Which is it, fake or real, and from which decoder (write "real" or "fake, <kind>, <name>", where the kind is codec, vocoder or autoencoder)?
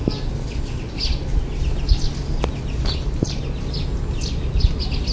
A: real